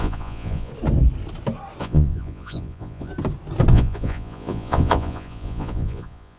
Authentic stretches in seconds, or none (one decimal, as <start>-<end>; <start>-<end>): 0.7-1.8; 3.1-3.7